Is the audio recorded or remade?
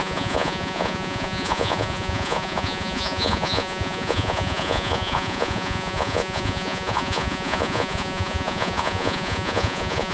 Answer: remade